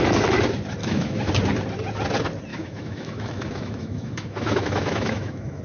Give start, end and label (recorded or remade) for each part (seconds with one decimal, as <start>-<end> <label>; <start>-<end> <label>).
0.0-0.8 recorded; 0.8-1.3 remade; 1.3-2.5 recorded; 2.5-5.6 remade